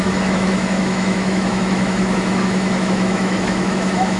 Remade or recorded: remade